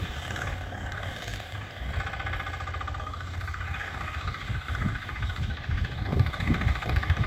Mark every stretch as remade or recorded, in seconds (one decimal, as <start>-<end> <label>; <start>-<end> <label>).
0.0-1.9 remade; 1.9-3.0 recorded; 3.0-7.3 remade